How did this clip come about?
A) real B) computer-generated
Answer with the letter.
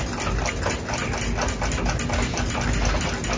A